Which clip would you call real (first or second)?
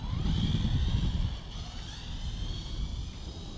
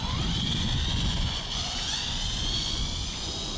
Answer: first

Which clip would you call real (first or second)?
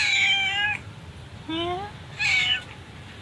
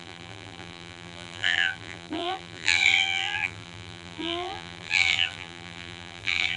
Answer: first